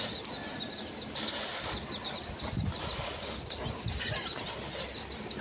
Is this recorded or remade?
recorded